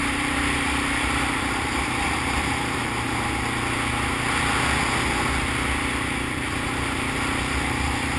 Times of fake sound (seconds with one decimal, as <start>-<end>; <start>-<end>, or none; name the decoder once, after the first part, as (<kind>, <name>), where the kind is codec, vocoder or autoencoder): 0.0-2.8 (vocoder, BigVGAN v2); 6.5-8.2